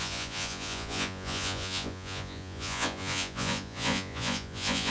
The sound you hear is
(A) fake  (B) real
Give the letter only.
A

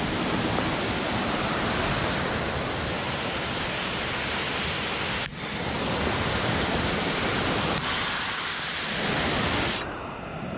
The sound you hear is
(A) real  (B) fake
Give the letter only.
A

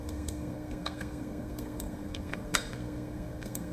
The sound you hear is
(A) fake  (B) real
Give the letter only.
A